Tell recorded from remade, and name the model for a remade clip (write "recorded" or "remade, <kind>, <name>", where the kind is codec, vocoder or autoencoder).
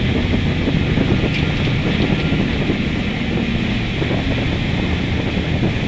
recorded